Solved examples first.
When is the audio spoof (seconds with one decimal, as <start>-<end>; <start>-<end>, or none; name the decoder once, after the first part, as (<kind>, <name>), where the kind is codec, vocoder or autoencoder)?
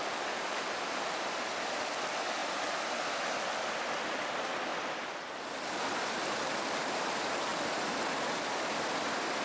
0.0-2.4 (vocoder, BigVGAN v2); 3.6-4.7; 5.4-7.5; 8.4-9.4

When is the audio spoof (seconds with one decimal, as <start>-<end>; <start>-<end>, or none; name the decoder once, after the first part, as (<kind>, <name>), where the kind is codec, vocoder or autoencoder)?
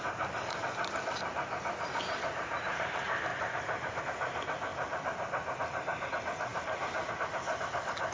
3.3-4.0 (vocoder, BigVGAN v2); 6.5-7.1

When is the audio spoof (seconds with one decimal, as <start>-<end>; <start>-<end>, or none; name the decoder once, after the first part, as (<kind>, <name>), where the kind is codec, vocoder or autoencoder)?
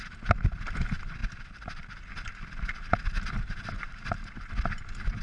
1.2-2.9 (vocoder, BigVGAN v2)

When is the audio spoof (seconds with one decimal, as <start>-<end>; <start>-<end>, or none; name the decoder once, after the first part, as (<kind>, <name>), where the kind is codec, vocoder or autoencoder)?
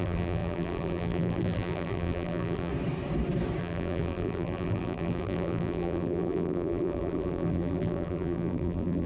0.0-2.7 (vocoder, BigVGAN v2); 3.6-9.1